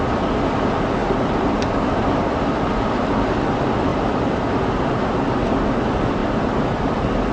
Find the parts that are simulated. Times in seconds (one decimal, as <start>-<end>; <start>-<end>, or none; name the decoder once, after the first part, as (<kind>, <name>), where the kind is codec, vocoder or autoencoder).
1.0-2.9 (vocoder, BigVGAN v2); 3.9-4.6; 6.2-7.3